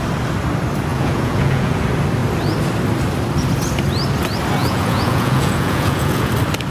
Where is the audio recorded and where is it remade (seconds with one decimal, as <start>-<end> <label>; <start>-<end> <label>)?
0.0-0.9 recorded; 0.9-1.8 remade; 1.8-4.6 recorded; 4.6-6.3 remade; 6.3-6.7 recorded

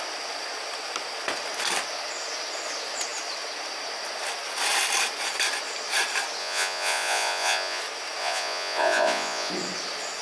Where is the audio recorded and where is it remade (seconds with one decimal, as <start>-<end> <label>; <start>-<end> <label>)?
0.0-6.4 recorded; 6.4-7.8 remade; 7.8-8.2 recorded; 8.2-9.5 remade; 9.5-10.2 recorded

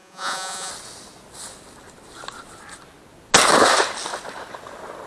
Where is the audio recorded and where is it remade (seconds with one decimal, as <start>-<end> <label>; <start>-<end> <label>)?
0.0-0.7 remade; 0.7-5.1 recorded

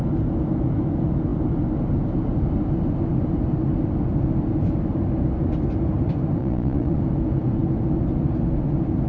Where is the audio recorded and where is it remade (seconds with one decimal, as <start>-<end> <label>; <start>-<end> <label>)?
0.0-6.4 recorded; 6.4-7.0 remade; 7.0-9.1 recorded

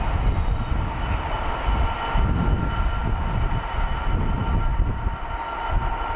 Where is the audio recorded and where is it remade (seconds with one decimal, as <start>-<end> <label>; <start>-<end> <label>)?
0.0-6.2 recorded